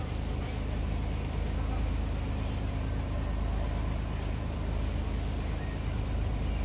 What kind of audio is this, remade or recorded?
recorded